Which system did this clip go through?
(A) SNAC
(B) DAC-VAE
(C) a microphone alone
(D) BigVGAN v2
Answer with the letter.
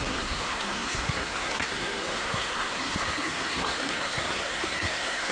A